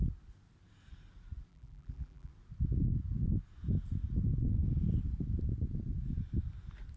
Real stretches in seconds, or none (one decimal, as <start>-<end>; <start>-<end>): 0.0-1.5; 2.3-7.0